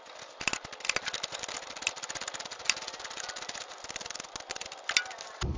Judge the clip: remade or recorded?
recorded